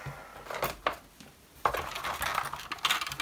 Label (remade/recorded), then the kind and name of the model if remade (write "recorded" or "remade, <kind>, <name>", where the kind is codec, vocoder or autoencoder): recorded